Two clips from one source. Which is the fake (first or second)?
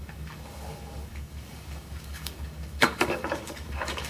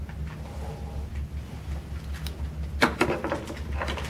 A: first